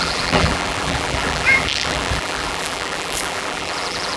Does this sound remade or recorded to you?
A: remade